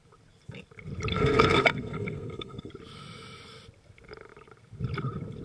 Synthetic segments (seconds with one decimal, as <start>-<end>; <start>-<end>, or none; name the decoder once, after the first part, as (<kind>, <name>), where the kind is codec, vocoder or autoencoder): 1.1-2.7 (codec, SNAC)